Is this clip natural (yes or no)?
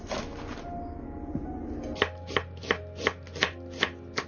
yes